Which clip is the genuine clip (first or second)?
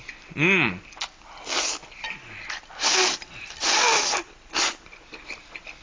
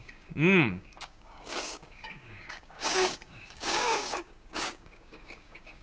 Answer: first